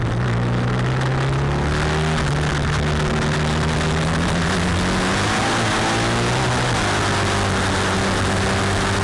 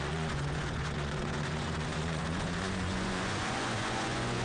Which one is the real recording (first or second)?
first